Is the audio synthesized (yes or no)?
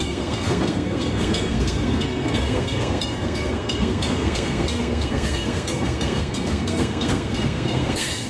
yes